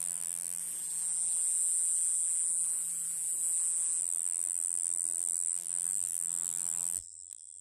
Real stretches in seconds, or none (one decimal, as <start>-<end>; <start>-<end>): 0.6-4.0

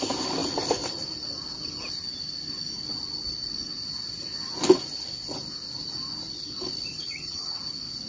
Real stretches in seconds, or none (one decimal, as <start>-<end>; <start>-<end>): 0.0-6.9; 7.6-8.1

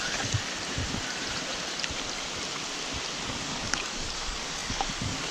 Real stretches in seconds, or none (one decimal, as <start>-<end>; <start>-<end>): 0.5-3.2